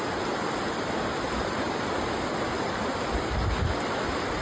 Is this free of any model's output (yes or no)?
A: yes